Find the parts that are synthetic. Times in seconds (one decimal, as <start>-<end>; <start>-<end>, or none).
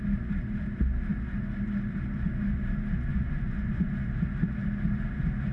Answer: 3.1-3.9